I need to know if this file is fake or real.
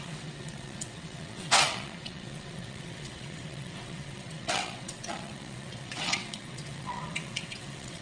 fake